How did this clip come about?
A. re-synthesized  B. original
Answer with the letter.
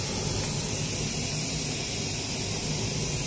B